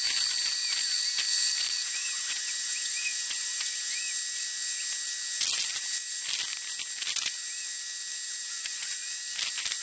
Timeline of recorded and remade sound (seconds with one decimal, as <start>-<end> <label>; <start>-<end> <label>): 0.0-1.8 recorded; 1.8-4.0 remade; 4.0-8.4 recorded; 8.4-8.9 remade; 8.9-9.8 recorded